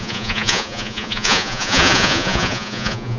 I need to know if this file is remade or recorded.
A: remade